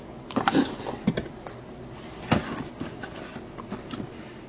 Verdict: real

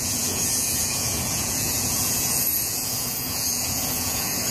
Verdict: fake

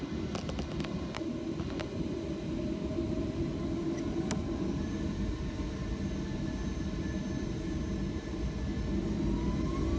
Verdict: real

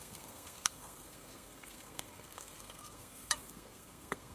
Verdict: fake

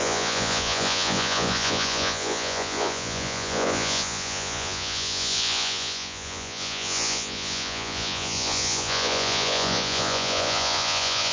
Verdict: fake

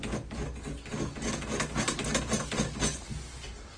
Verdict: real